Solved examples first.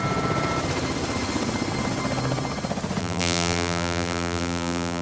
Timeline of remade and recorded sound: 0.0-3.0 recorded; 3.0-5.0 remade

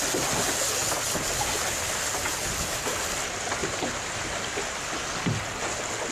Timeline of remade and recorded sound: 0.0-3.6 recorded; 3.6-4.4 remade; 4.4-6.1 recorded